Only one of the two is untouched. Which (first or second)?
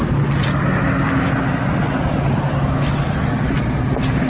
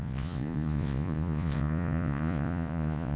first